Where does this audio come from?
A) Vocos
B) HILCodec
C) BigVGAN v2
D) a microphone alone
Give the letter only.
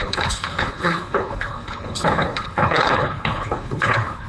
B